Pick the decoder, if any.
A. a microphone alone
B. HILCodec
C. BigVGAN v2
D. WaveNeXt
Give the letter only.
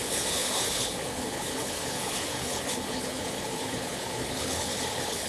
B